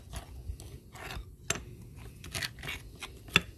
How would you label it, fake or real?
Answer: real